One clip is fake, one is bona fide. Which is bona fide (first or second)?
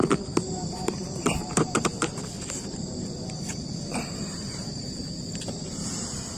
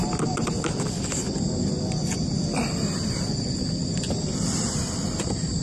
second